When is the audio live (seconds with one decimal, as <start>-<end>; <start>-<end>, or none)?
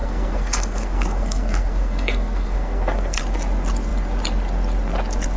3.2-5.4